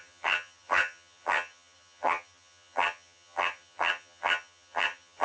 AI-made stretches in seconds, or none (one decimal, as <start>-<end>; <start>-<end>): 0.0-5.2